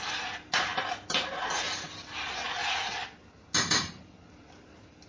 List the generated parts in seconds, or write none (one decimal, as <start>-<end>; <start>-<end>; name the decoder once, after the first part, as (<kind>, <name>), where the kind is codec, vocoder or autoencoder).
none

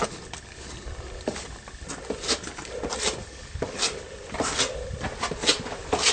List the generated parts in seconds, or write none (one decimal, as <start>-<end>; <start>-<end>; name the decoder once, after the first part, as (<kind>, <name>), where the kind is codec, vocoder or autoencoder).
3.2-3.8 (codec, DAC)

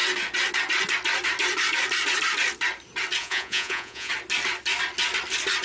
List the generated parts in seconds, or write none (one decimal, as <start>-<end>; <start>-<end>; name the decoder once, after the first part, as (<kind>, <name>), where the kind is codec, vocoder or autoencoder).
3.2-4.1 (vocoder, Vocos)

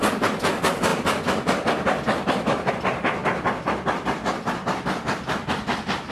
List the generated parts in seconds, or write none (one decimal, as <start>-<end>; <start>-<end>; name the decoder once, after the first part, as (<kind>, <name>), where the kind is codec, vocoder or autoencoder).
0.9-2.7 (vocoder, BigVGAN v2)